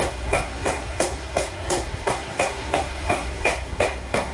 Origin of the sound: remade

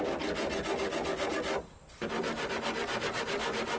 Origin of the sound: recorded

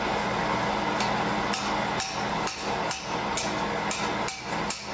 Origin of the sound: recorded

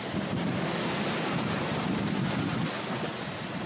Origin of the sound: recorded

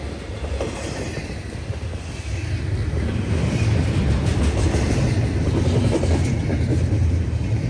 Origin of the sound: recorded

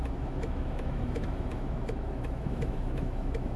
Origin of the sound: remade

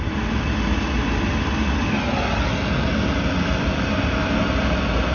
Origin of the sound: recorded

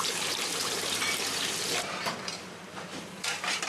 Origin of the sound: remade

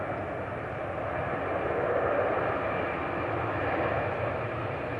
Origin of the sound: recorded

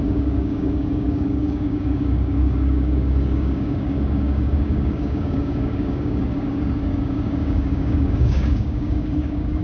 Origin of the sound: remade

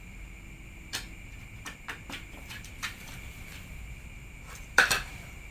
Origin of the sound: remade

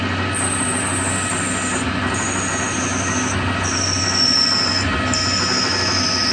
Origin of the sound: recorded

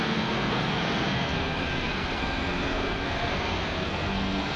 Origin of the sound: remade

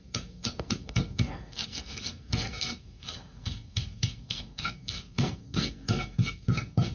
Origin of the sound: remade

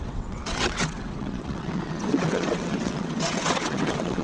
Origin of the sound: remade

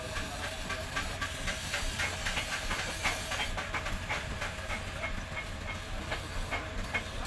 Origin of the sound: recorded